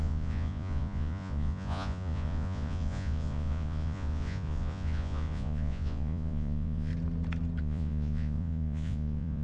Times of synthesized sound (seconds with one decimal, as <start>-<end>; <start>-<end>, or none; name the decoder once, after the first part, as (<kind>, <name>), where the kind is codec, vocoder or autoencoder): 0.0-6.9 (vocoder, Vocos); 7.6-9.4